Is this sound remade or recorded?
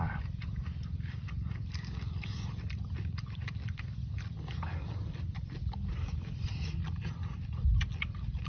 recorded